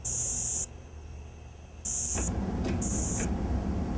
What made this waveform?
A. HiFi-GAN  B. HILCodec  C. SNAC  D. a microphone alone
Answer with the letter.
D